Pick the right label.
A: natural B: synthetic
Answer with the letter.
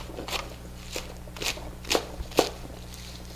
A